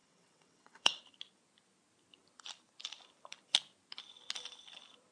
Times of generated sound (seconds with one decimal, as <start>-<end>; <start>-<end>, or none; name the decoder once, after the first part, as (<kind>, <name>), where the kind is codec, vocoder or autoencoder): 0.0-1.0 (vocoder, WaveNeXt)

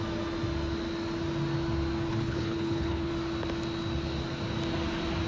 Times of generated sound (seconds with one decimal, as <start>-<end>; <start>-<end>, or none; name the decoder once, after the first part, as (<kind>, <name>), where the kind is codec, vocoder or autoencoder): 2.1-3.1 (codec, HILCodec)

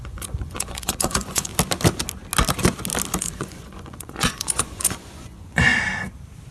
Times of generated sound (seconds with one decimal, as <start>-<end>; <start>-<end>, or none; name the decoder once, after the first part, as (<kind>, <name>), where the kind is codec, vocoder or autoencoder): 0.0-1.5 (vocoder, Vocos); 3.2-5.7

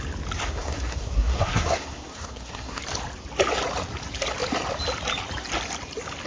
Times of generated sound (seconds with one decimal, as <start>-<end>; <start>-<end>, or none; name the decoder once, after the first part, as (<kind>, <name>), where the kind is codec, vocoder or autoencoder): 0.4-2.8 (codec, SNAC)